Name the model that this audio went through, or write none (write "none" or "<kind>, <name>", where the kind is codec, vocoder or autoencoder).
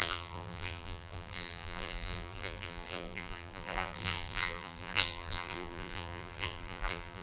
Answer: vocoder, BigVGAN v2